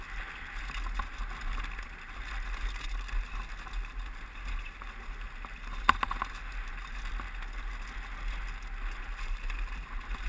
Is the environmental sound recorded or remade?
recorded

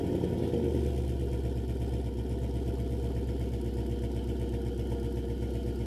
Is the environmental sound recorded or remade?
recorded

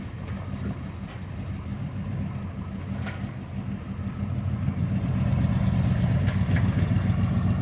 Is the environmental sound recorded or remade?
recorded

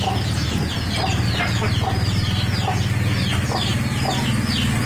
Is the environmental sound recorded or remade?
recorded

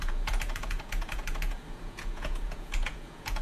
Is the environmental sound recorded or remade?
remade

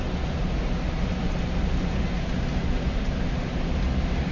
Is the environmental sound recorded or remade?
recorded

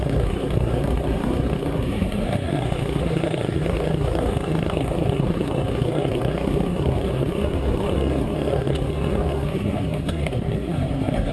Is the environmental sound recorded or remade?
remade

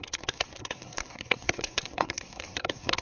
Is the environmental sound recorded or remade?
remade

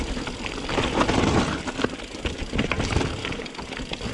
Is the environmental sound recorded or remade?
recorded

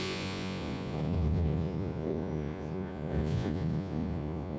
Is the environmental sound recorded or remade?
remade